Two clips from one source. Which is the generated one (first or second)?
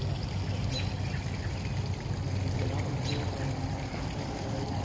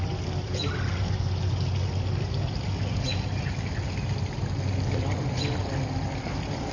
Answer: first